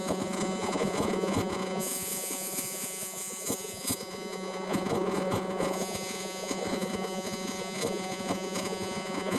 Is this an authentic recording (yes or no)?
no